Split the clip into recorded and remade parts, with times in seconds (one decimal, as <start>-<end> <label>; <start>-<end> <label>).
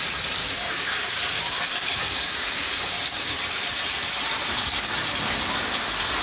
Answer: 0.0-0.4 recorded; 0.4-3.4 remade; 3.4-6.2 recorded